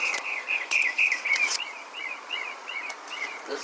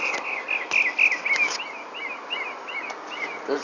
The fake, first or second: first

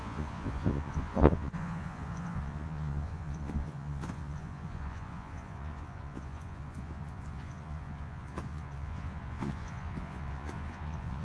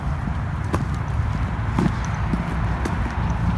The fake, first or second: first